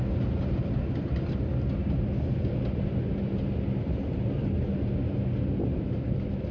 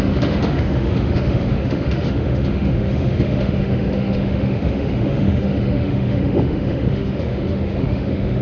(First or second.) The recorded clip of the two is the first